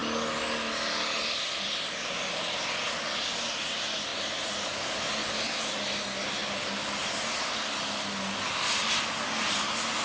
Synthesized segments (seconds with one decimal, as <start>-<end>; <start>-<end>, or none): none